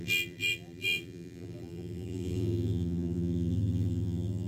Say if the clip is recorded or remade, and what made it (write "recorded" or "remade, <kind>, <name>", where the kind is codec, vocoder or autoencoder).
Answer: remade, vocoder, BigVGAN v2